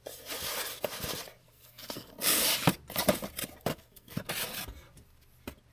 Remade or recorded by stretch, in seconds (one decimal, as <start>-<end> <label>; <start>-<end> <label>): 0.0-1.4 recorded; 1.4-2.1 remade; 2.1-3.7 recorded; 3.7-4.3 remade; 4.3-5.7 recorded